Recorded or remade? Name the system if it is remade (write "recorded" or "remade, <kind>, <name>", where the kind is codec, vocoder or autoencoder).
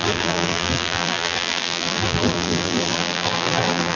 remade, vocoder, BigVGAN v2